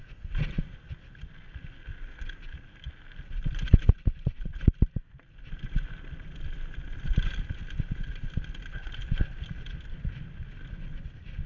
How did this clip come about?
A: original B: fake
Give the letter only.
A